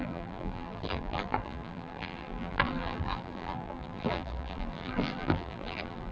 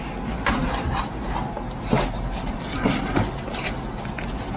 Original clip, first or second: second